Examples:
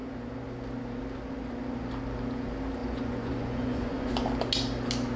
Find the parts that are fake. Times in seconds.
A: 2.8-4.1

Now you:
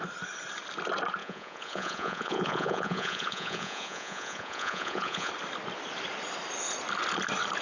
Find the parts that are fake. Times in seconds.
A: 1.2-5.3

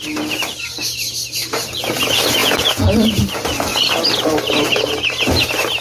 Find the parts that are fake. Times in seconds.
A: 2.4-3.1